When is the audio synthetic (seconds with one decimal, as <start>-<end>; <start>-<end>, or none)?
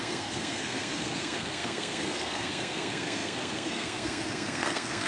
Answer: 0.0-5.1